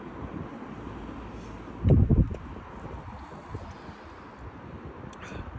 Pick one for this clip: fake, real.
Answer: real